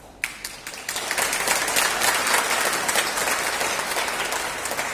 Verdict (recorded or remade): recorded